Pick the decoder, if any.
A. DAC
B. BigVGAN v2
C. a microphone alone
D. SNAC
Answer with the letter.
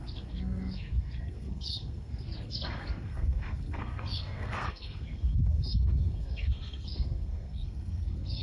D